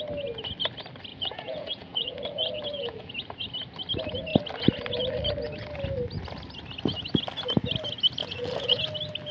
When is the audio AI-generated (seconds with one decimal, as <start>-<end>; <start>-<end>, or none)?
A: 1.1-3.1; 8.2-8.8